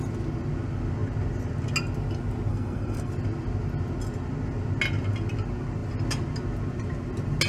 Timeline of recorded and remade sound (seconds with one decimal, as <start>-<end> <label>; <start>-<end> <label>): 0.0-2.5 recorded; 2.5-3.1 remade; 3.1-7.5 recorded